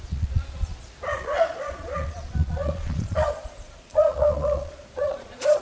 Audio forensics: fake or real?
fake